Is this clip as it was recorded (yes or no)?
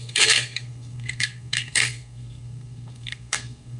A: no